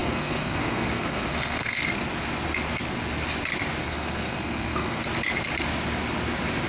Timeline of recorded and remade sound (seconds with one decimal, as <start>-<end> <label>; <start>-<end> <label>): 0.0-1.8 remade; 1.8-3.8 recorded; 3.8-5.0 remade; 5.0-6.7 recorded